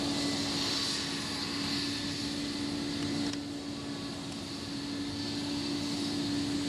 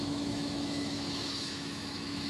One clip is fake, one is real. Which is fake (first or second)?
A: second